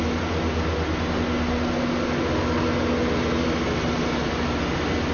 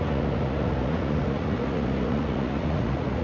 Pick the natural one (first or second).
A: first